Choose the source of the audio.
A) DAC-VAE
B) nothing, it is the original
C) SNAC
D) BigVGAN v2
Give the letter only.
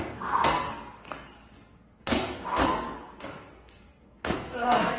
C